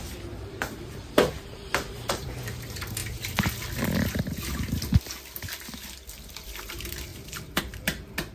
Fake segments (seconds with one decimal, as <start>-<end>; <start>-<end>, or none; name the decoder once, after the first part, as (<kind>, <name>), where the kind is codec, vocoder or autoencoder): 0.0-3.0 (vocoder, BigVGAN v2); 6.6-8.3